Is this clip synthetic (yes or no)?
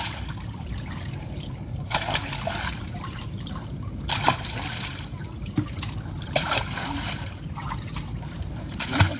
yes